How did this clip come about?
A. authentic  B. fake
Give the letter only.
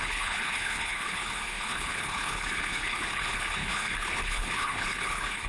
B